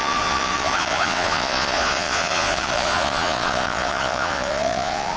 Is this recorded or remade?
remade